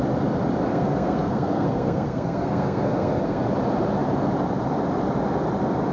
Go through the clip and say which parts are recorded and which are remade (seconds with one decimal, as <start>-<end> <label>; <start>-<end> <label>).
0.0-0.7 recorded; 0.7-3.4 remade; 3.4-5.9 recorded